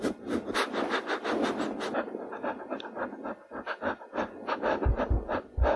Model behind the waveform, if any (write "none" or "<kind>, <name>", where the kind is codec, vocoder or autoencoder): none